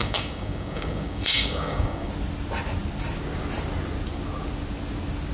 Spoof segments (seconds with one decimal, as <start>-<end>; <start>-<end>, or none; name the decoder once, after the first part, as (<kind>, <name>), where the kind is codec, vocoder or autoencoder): 0.0-2.1 (codec, DAC)

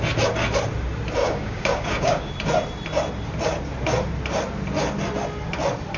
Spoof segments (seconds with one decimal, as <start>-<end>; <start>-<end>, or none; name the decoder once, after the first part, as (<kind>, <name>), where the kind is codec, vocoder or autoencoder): 1.2-2.3 (codec, DAC)

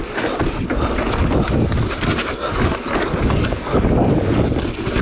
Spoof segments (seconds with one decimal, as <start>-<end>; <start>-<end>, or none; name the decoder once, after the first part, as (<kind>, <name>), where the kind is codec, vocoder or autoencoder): 2.2-4.6 (codec, DAC)

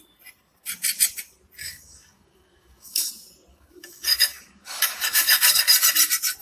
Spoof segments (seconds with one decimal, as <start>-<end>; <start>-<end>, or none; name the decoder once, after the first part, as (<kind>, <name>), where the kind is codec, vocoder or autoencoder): 1.6-3.1 (codec, DAC); 3.5-5.6

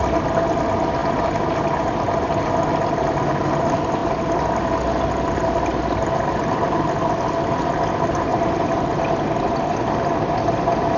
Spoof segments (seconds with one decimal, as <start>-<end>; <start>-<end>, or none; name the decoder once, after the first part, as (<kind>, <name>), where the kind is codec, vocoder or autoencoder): none

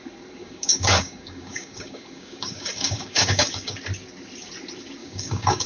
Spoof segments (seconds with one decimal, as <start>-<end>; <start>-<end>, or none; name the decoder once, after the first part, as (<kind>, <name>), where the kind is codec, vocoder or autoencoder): 0.4-3.8 (codec, DAC); 5.0-5.7

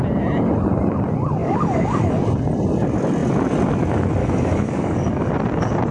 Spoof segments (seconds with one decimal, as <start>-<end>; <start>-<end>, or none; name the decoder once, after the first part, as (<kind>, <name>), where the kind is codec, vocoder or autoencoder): 1.4-2.2 (codec, DAC); 4.2-5.3

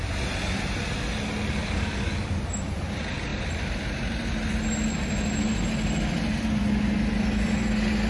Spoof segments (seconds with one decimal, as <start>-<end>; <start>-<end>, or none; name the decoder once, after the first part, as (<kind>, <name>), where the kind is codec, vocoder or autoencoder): 1.6-2.4 (codec, DAC)